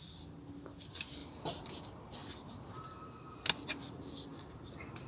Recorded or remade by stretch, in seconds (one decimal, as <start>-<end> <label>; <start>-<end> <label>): 0.0-5.1 recorded